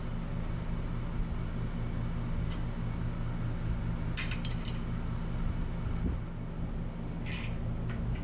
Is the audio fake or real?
real